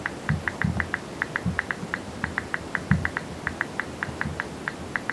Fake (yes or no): no